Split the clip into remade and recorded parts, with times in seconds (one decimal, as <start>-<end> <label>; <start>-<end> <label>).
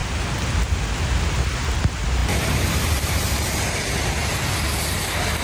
0.0-5.4 recorded